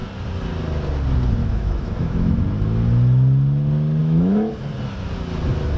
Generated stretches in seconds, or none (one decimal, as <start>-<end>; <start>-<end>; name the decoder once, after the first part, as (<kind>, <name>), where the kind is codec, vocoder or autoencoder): 1.4-2.4 (autoencoder, DAC-VAE); 4.0-4.5